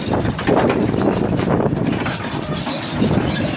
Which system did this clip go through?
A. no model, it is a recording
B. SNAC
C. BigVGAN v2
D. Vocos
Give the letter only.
C